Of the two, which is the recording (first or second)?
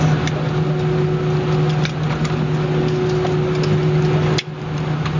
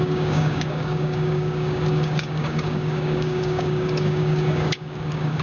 first